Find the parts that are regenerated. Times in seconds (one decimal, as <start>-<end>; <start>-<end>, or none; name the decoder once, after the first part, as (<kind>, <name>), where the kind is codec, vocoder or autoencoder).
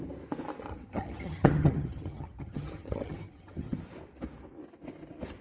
0.7-3.8 (vocoder, HiFi-GAN)